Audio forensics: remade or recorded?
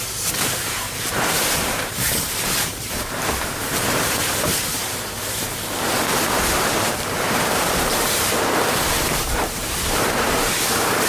remade